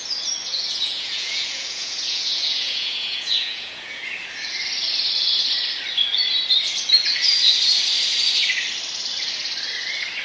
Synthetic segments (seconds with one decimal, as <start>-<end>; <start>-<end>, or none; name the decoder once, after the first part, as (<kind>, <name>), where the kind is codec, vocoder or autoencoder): 0.5-4.0 (vocoder, Vocos)